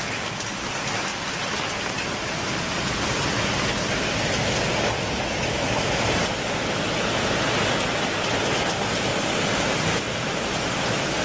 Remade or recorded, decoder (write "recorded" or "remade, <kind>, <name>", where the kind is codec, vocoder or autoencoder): recorded